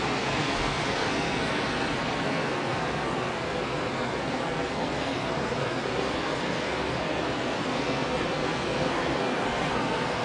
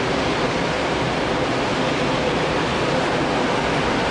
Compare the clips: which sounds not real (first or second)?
first